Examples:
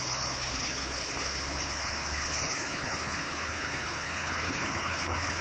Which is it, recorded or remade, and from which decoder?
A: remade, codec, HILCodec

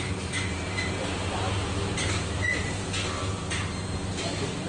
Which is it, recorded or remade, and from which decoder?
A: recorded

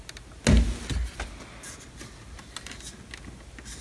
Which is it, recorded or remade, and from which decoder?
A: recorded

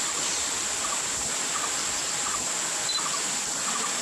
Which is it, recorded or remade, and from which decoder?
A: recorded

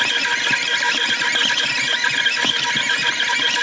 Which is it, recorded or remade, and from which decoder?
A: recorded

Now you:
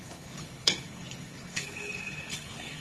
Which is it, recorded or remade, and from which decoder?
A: remade, codec, HILCodec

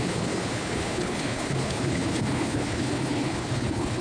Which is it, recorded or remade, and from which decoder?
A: remade, codec, HILCodec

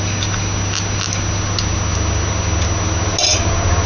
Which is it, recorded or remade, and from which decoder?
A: recorded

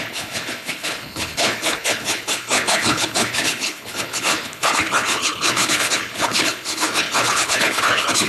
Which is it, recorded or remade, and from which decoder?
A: remade, codec, HILCodec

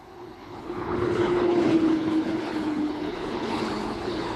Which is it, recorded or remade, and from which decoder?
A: remade, codec, HILCodec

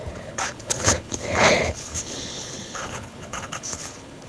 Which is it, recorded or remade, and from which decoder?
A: remade, codec, HILCodec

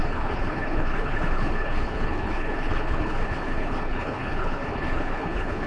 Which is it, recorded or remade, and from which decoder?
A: remade, codec, HILCodec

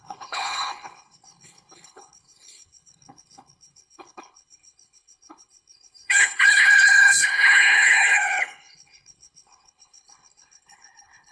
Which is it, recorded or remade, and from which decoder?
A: remade, codec, HILCodec